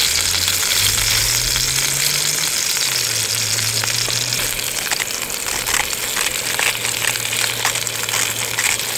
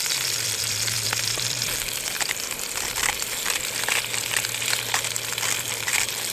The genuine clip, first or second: first